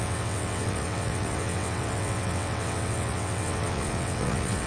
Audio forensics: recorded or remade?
remade